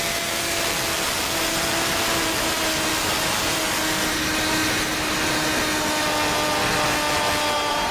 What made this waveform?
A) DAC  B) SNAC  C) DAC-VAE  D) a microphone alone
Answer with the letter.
D